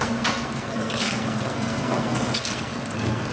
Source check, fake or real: fake